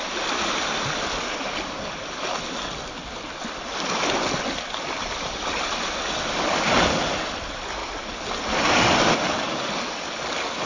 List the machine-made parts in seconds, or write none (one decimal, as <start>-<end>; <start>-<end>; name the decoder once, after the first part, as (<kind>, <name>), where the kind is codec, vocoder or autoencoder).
none

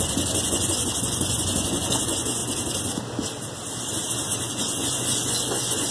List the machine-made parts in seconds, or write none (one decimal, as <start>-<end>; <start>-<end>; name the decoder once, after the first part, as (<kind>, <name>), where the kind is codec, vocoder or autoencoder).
0.0-2.4 (vocoder, Vocos); 4.5-5.9

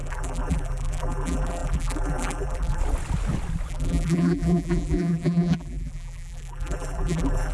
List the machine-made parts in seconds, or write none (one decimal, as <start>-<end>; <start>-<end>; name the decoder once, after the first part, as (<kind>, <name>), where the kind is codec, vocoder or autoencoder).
0.0-2.8 (vocoder, BigVGAN v2); 3.7-7.5